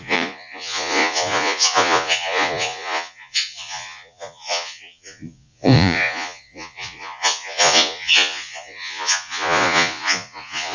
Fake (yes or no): yes